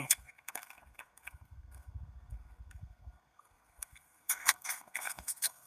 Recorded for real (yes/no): no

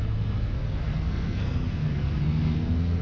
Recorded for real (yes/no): no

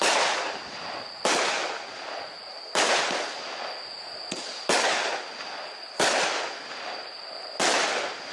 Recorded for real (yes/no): yes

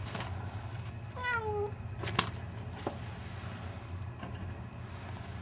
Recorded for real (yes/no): yes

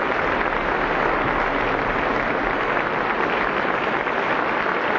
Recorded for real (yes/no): yes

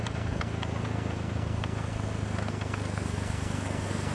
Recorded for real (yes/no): no